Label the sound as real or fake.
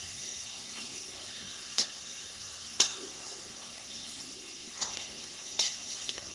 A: fake